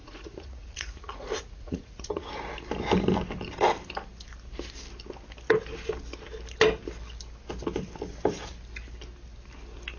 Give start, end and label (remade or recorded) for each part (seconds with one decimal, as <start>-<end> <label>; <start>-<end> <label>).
0.0-2.3 remade; 2.3-10.0 recorded